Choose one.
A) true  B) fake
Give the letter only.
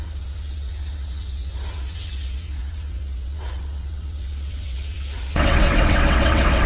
B